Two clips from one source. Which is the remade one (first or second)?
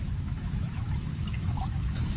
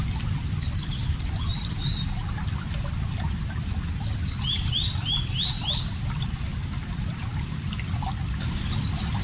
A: first